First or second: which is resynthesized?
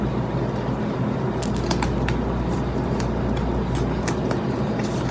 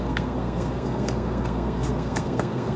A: second